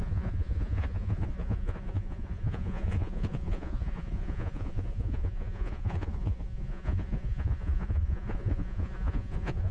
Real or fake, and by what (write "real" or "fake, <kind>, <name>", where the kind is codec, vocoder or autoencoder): fake, vocoder, Vocos